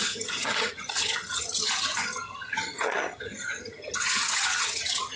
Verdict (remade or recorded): remade